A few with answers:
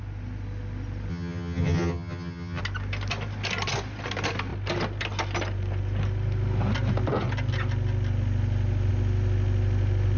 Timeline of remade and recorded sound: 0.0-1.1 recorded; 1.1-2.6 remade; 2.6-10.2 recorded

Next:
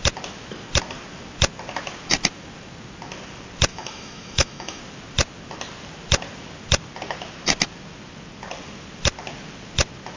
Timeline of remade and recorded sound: 0.0-3.7 recorded; 3.7-4.8 remade; 4.8-10.2 recorded

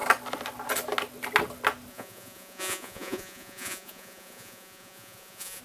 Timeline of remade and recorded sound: 0.0-1.9 recorded; 1.9-5.6 remade

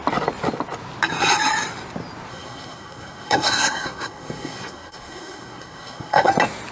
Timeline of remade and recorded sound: 0.0-2.3 recorded; 2.3-6.3 remade; 6.3-6.7 recorded